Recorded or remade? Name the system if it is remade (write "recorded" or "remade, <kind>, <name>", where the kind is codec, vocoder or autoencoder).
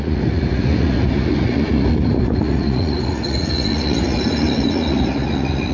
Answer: remade, vocoder, Vocos